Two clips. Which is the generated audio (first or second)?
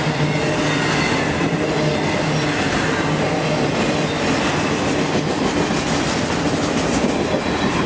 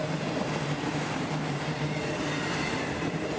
second